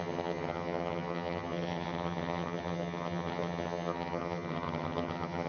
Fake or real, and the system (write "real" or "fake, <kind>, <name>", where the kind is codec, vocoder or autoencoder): fake, vocoder, HiFi-GAN